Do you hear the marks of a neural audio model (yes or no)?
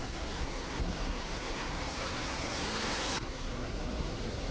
yes